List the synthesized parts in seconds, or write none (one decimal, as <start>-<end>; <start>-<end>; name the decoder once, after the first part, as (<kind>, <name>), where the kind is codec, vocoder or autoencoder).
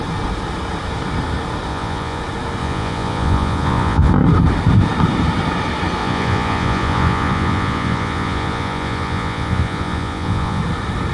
1.7-2.2 (vocoder, Vocos); 2.6-4.1; 6.0-10.6